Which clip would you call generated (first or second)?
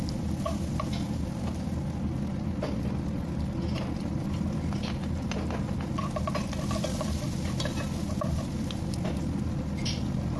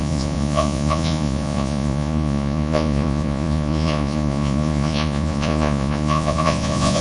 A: second